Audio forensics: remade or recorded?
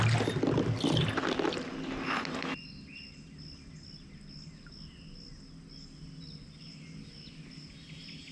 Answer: recorded